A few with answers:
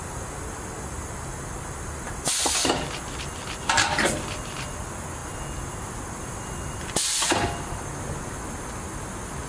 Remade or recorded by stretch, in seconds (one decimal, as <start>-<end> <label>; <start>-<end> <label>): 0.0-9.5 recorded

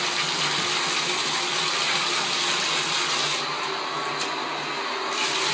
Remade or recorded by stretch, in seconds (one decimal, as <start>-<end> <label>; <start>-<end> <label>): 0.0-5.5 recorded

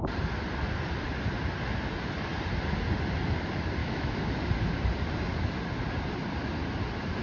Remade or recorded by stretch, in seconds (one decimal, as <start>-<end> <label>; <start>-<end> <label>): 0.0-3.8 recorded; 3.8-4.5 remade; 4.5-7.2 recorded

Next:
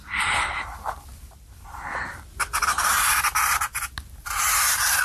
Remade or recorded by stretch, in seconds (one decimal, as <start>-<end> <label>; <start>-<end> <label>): 0.0-3.0 remade; 3.0-5.0 recorded